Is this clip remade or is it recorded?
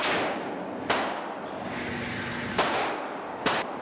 recorded